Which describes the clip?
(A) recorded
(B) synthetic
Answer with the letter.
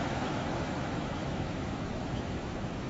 B